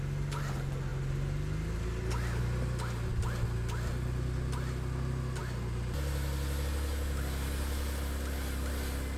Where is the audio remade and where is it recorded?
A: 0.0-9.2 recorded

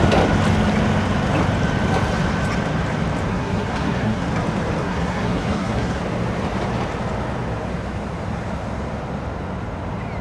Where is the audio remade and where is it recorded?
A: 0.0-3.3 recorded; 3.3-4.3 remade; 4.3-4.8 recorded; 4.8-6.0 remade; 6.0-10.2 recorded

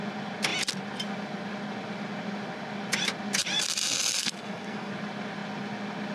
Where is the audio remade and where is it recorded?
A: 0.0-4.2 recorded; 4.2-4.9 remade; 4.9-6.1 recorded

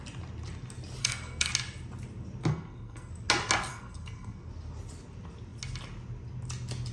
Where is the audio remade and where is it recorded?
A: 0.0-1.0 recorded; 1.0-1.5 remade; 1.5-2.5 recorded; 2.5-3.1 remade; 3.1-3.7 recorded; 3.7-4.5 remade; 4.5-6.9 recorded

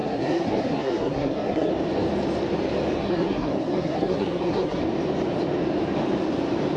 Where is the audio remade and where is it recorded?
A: 0.0-1.7 remade; 1.7-3.0 recorded; 3.0-4.8 remade; 4.8-6.8 recorded